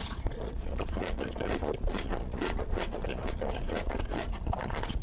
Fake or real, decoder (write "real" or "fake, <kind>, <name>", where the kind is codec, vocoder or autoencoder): fake, vocoder, Vocos